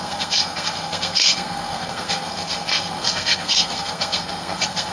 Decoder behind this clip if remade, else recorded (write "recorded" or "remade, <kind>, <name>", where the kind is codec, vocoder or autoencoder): remade, codec, SNAC